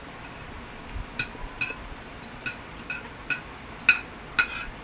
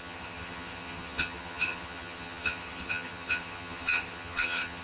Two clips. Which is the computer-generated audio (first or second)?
second